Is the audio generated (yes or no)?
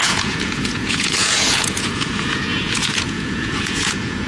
yes